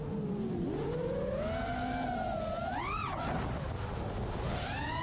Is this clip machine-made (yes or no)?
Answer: no